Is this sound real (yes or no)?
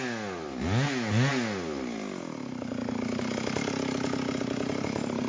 yes